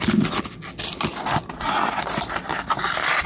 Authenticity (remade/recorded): recorded